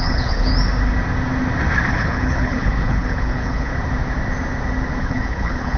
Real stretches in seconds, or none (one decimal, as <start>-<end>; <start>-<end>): 0.5-1.9; 3.7-5.0